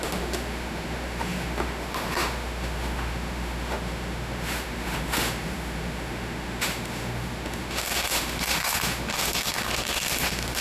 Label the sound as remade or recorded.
remade